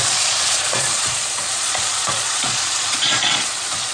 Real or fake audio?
fake